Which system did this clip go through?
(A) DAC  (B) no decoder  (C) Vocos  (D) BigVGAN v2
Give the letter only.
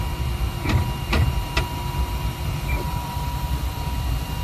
D